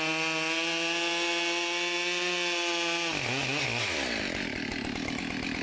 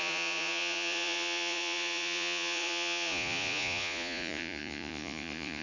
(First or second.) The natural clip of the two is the first